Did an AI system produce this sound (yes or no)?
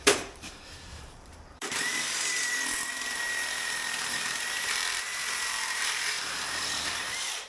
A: yes